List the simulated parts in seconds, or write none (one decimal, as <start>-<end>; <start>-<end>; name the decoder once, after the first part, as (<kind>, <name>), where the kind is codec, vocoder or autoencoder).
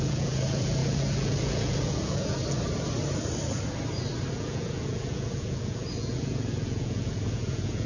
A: 0.0-2.4 (vocoder, Vocos); 4.3-7.9